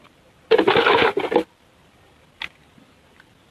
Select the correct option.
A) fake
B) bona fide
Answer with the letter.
B